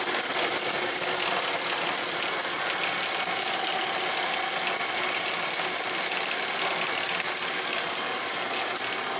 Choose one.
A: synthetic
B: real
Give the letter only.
B